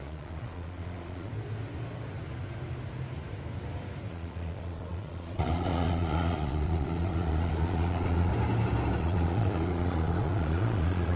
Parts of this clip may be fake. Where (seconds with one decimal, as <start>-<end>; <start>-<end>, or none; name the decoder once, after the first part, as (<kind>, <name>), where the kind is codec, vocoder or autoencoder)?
0.0-1.3 (vocoder, Vocos); 4.1-8.3; 9.0-11.2